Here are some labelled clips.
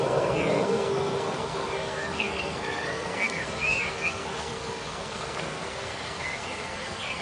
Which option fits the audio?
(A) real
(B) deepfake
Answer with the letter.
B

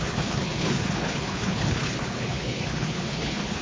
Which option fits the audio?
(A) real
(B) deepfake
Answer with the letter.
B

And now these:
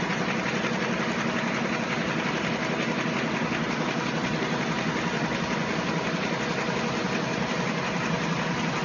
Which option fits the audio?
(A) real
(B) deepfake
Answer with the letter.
A